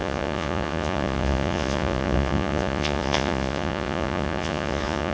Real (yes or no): no